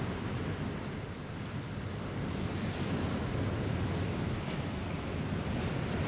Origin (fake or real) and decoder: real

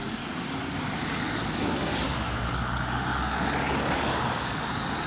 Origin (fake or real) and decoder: fake, codec, DAC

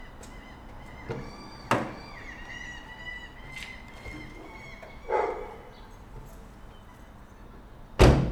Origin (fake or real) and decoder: real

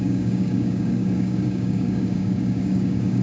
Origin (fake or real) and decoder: fake, codec, DAC